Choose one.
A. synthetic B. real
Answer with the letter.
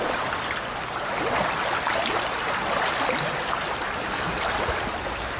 B